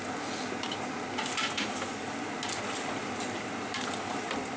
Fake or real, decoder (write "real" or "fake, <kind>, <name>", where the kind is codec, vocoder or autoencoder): real